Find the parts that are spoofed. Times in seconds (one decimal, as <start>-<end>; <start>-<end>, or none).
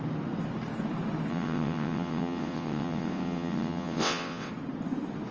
1.3-4.5